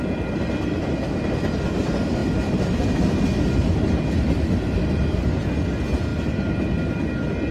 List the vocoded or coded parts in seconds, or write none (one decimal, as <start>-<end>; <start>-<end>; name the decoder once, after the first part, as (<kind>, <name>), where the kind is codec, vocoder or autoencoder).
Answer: none